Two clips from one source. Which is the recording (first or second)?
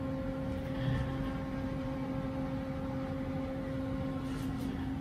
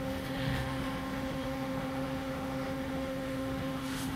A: first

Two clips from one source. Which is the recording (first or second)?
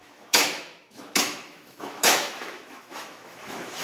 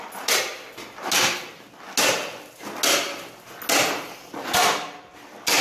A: second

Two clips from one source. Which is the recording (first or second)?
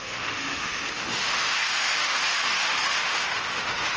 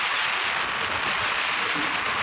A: second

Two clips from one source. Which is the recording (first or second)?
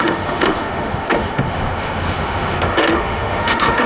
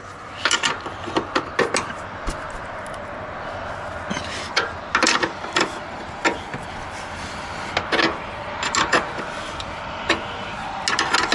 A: second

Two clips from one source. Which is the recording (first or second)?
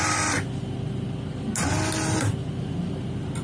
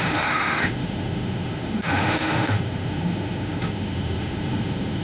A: first